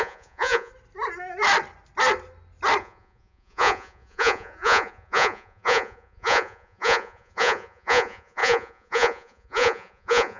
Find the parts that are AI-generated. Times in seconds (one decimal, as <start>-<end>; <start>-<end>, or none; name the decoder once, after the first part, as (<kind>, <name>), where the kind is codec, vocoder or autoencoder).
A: 0.0-0.7 (vocoder, Vocos); 2.8-10.4